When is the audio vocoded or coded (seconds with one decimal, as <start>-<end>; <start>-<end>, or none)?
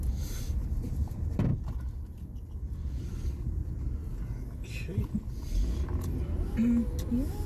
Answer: 1.5-4.1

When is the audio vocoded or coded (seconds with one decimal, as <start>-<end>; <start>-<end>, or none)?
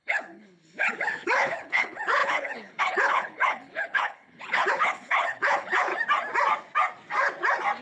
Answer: 0.0-5.9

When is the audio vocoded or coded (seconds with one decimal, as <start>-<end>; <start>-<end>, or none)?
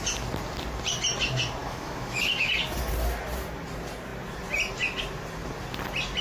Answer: 1.6-2.5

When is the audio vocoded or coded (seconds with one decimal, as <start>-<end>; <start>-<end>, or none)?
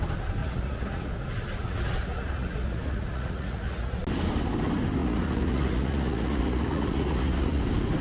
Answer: 0.4-1.1; 1.6-4.0; 5.0-7.6